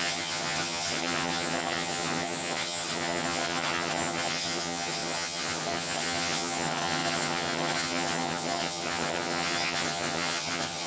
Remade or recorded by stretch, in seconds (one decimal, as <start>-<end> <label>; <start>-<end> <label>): 0.0-10.9 remade